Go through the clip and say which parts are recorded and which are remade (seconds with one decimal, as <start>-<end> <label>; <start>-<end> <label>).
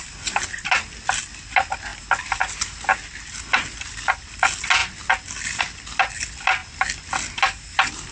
0.0-8.1 recorded